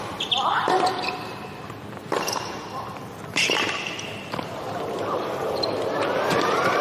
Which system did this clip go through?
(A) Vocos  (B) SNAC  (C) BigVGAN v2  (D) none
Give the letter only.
C